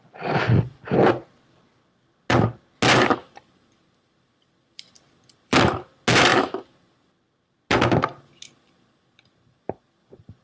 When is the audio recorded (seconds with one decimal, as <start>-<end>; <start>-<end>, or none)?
0.0-3.2; 5.7-10.4